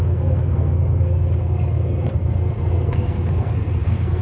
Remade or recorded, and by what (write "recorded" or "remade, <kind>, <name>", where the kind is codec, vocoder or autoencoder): remade, codec, SNAC